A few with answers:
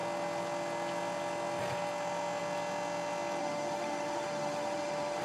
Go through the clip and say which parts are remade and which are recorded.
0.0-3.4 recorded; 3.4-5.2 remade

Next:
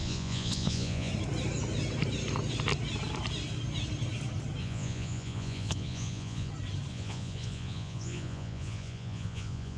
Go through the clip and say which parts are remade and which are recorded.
0.0-1.1 remade; 1.1-4.6 recorded; 4.6-6.5 remade; 6.5-6.9 recorded; 6.9-9.8 remade

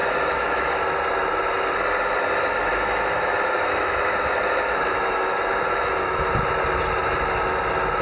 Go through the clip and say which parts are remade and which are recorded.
0.0-0.7 remade; 0.7-2.7 recorded; 2.7-6.3 remade; 6.3-8.0 recorded